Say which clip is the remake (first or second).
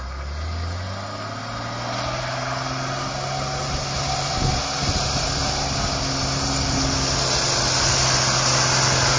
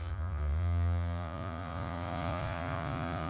second